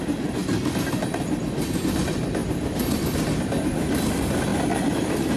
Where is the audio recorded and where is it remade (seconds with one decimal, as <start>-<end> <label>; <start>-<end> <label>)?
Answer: 0.0-5.4 recorded